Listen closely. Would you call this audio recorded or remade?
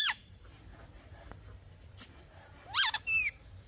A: remade